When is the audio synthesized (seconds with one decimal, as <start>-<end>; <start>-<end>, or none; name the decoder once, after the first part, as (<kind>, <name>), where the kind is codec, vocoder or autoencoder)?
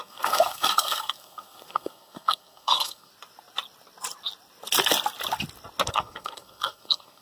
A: 0.0-3.1 (codec, SNAC); 5.9-7.2